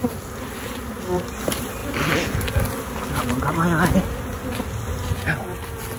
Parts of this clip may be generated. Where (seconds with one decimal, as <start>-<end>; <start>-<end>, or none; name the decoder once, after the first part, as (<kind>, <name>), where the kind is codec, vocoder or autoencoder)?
none